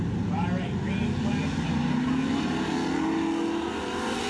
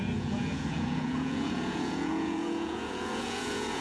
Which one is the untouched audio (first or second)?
first